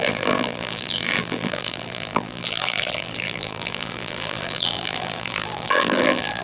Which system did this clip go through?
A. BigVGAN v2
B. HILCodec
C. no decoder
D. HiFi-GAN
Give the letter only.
A